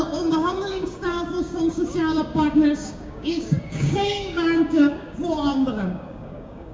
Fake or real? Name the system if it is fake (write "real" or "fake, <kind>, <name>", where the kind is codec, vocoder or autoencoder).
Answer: fake, codec, DAC